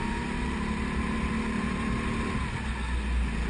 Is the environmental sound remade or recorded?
recorded